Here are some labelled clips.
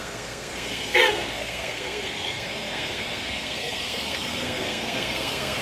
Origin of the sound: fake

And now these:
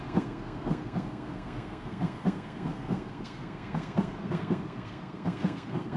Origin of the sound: fake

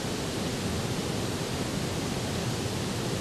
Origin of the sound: real